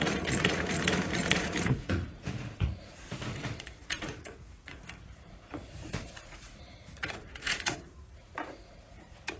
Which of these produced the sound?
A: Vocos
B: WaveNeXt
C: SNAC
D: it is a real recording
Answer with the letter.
A